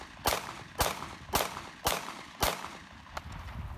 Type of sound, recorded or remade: recorded